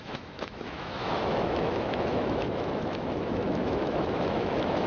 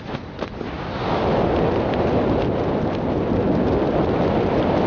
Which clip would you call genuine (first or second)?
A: second